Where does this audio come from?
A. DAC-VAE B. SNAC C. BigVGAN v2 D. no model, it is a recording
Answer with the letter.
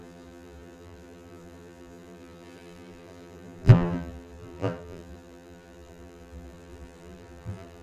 C